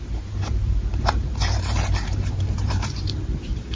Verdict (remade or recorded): remade